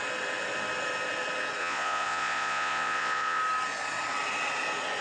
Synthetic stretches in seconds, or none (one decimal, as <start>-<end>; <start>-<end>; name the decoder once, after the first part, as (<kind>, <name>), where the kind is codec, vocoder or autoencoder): 1.6-3.4 (vocoder, Vocos)